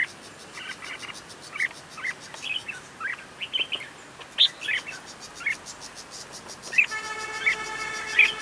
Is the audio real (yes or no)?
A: yes